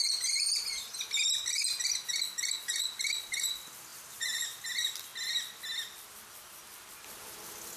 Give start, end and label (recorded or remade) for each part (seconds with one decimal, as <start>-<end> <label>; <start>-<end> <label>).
0.0-3.9 recorded; 3.9-4.6 remade; 4.6-7.8 recorded